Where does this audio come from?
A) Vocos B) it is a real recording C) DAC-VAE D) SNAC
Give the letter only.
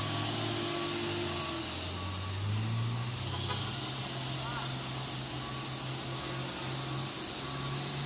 B